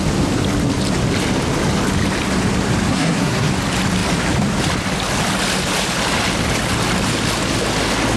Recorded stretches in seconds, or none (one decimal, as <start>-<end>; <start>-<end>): 0.0-2.9; 3.5-8.2